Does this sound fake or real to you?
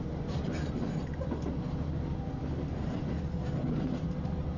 real